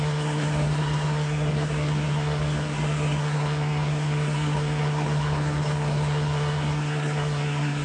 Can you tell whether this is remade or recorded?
remade